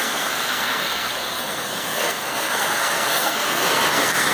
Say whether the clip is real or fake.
fake